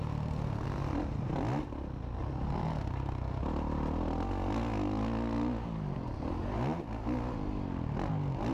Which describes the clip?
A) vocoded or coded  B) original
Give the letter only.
B